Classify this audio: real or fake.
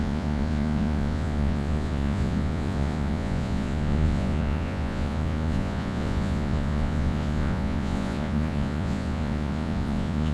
fake